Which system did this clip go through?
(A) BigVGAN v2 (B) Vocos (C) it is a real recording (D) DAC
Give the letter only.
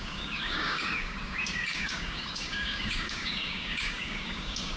D